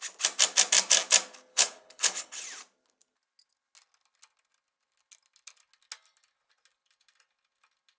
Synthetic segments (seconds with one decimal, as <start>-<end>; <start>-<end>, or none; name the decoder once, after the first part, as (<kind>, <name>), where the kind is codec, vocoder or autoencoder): 1.5-2.4 (codec, HILCodec)